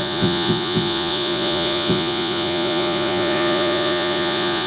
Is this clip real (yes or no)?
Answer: no